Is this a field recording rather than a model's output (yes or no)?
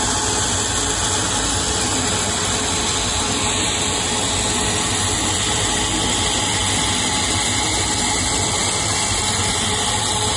yes